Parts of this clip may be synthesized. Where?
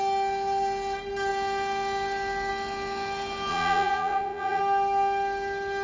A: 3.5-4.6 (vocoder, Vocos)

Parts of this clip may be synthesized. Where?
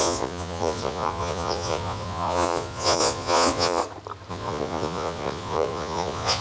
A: 0.0-3.8 (vocoder, Vocos); 4.3-6.4